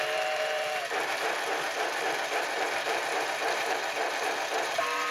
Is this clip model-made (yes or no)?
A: yes